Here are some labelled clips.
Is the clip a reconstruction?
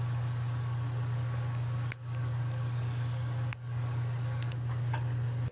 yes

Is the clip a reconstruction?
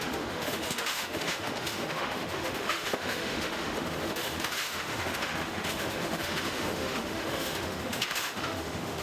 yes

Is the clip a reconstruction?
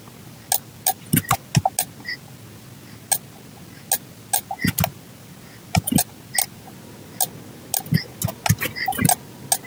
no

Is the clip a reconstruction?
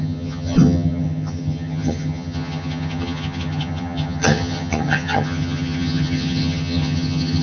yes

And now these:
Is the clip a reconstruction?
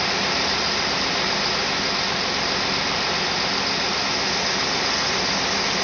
no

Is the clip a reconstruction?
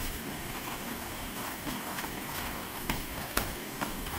yes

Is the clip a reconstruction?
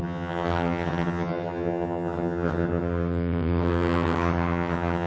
yes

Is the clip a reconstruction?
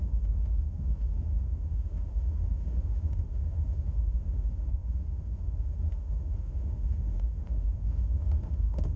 yes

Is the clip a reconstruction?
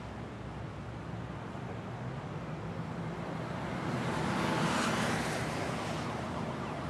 no